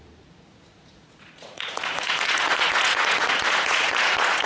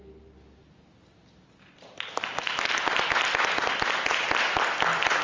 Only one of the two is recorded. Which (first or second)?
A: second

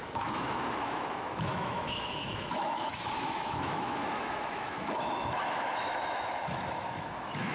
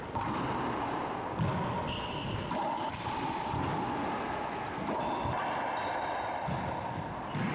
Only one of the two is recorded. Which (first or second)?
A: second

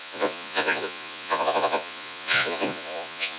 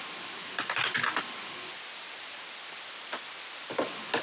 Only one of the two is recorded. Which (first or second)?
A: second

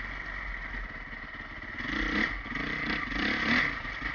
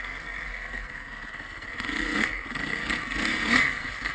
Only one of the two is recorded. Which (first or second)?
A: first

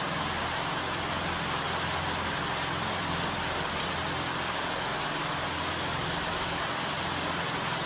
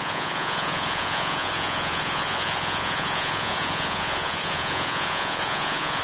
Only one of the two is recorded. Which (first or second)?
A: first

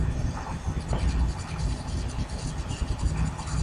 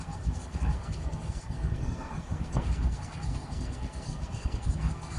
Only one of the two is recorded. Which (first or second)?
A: first